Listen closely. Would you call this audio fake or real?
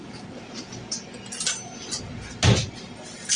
real